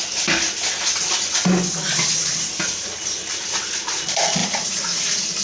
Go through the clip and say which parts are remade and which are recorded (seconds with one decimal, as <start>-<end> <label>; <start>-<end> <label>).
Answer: 0.0-4.4 recorded; 4.4-5.4 remade